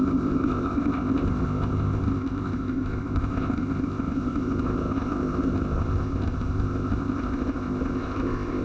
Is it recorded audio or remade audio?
remade